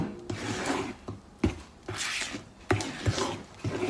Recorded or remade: recorded